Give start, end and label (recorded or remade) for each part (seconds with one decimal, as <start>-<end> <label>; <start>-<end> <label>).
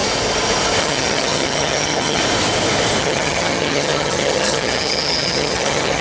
0.0-0.8 recorded; 0.8-2.2 remade; 2.2-3.0 recorded; 3.0-6.0 remade